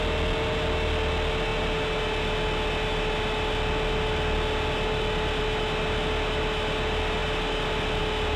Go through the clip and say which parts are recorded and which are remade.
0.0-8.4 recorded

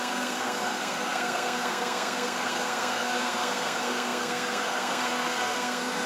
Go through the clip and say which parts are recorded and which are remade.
0.0-6.1 remade